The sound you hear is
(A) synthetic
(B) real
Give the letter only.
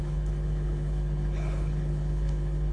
A